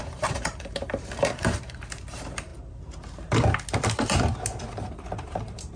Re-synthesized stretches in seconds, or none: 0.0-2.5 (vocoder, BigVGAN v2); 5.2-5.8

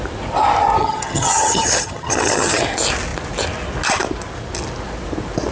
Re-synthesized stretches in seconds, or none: 0.8-2.6 (vocoder, HiFi-GAN)

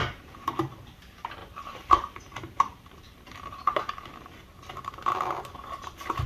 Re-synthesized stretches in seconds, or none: 0.0-0.7 (vocoder, BigVGAN v2); 1.4-3.8

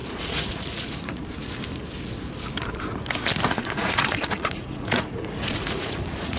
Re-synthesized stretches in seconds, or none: 0.0-1.2 (vocoder, Vocos); 3.5-6.4

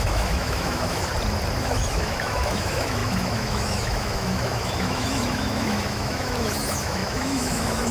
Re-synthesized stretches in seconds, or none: 0.0-1.1 (autoencoder, DAC-VAE); 1.6-7.9

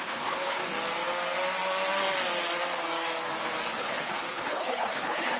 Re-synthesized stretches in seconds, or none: 0.0-0.6 (codec, HILCodec); 3.8-5.4